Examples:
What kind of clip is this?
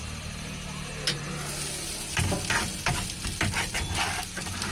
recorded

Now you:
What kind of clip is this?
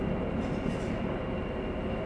recorded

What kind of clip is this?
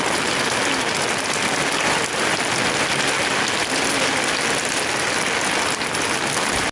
recorded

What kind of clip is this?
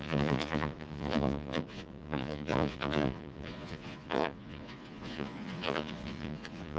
remade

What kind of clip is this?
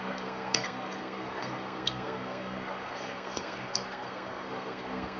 remade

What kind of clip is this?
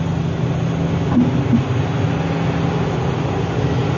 recorded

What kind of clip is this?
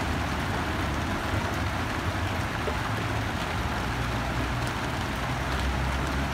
recorded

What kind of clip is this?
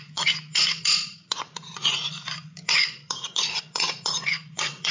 remade